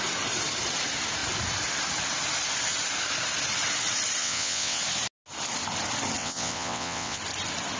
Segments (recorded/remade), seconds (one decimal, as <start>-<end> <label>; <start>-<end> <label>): 0.0-4.2 recorded; 4.2-4.8 remade; 4.8-6.2 recorded; 6.2-7.2 remade; 7.2-7.8 recorded